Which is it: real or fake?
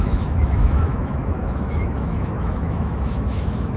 fake